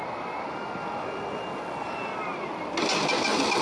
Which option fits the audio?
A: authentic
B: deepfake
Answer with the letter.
A